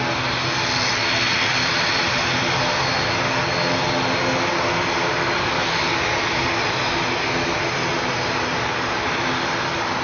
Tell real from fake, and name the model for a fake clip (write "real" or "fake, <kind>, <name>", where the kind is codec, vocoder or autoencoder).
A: real